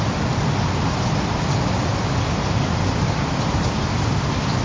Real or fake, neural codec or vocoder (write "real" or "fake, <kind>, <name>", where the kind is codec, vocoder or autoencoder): real